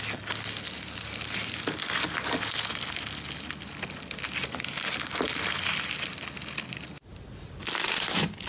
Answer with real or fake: real